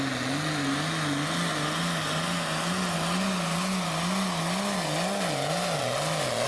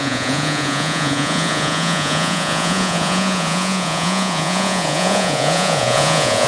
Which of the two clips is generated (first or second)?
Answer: second